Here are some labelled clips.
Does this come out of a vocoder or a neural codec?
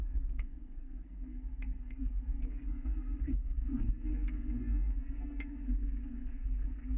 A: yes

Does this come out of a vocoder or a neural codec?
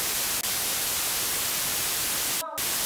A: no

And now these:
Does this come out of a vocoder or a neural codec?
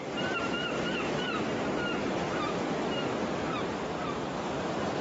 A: no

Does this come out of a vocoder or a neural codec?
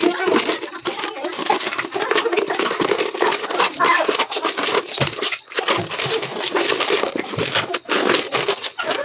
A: yes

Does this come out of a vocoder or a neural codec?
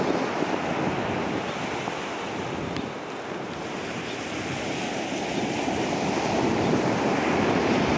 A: no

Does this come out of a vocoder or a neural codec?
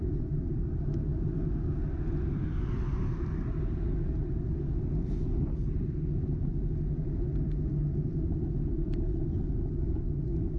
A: no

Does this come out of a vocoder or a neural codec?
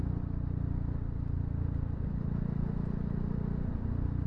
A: no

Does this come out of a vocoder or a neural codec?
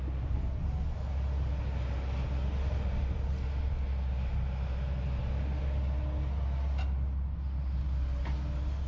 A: no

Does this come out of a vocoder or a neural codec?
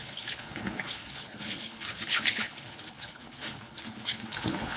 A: yes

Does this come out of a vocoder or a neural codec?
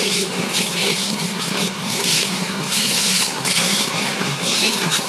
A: yes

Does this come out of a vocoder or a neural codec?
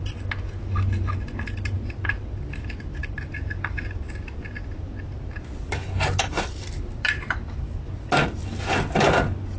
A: no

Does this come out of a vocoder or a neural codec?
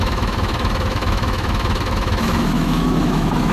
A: yes